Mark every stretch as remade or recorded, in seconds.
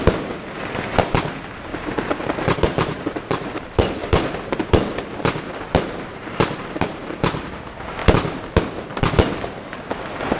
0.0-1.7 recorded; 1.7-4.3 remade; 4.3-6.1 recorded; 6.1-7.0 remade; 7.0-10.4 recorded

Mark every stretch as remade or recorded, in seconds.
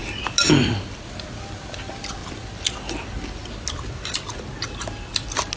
0.0-5.6 recorded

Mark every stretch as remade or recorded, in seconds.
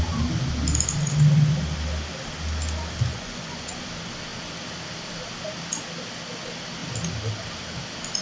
0.0-3.1 recorded; 3.1-3.8 remade; 3.8-8.2 recorded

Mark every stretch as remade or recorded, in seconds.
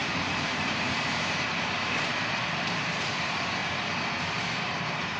0.0-3.6 remade; 3.6-4.2 recorded; 4.2-5.2 remade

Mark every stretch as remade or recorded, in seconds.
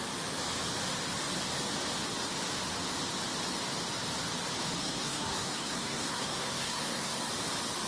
0.0-4.8 recorded; 4.8-7.3 remade; 7.3-7.9 recorded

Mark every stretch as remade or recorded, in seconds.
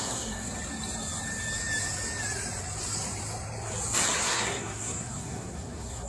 0.0-0.5 remade; 0.5-4.2 recorded; 4.2-6.1 remade